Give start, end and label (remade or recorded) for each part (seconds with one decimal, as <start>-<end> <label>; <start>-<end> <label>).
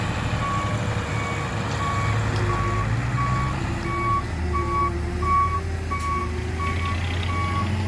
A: 0.0-7.9 recorded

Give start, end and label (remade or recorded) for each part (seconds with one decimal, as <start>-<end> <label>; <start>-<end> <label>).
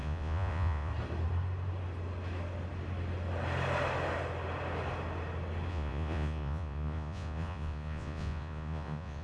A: 0.0-0.9 remade; 0.9-5.7 recorded; 5.7-9.2 remade